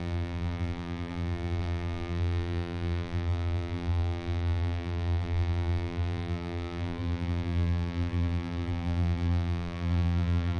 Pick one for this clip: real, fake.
fake